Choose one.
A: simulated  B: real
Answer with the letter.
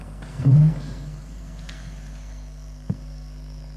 A